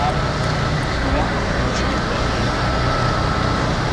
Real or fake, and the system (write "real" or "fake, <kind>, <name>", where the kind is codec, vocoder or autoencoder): real